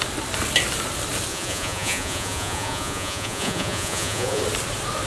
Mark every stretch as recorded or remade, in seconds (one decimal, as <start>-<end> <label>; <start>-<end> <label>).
0.0-1.3 recorded; 1.3-4.4 remade; 4.4-5.1 recorded